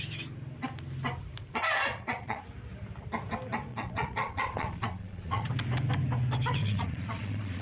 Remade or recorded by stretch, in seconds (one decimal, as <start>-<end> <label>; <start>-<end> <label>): 0.0-1.9 recorded; 1.9-2.4 remade; 2.4-3.7 recorded; 3.7-5.5 remade; 5.5-6.6 recorded; 6.6-7.6 remade